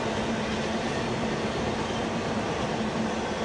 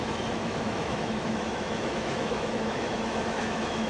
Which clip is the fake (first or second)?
second